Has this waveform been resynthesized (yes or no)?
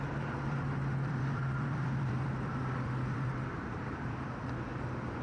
yes